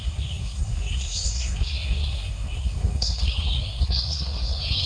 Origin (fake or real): fake